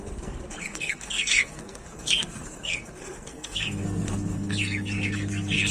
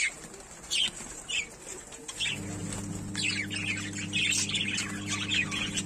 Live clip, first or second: second